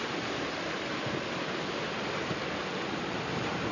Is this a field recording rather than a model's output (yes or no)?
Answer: yes